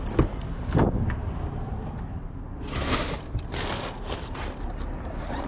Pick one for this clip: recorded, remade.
recorded